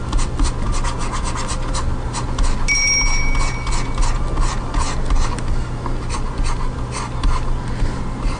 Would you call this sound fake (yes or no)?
no